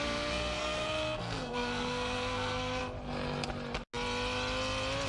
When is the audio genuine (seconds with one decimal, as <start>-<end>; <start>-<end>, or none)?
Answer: 2.8-5.1

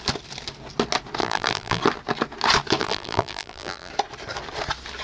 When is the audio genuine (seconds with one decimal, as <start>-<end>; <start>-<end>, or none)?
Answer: 0.0-1.2; 1.8-2.8; 3.9-5.0

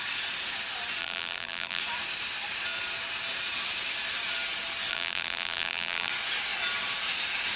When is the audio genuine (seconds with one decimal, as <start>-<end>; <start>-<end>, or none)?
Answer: 0.0-1.0; 1.8-4.9; 6.1-7.6

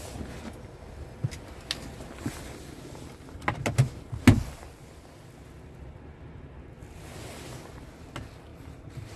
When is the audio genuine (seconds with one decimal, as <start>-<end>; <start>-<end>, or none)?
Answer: 0.0-8.5

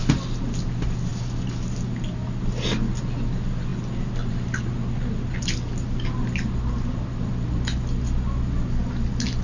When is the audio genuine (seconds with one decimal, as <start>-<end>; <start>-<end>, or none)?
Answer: 0.0-9.4

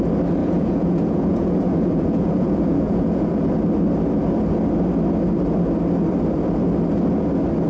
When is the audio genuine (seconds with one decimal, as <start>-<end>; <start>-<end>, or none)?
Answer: 0.0-0.4; 3.4-7.7

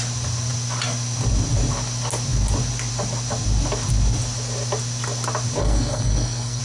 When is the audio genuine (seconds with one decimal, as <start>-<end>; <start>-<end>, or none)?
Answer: 0.0-5.6